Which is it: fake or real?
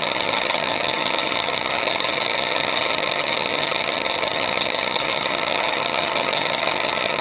fake